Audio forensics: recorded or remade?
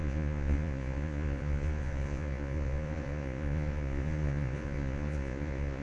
remade